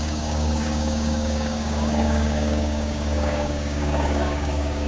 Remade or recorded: remade